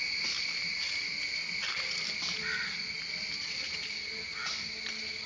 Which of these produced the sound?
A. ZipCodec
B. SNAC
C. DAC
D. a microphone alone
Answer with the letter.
D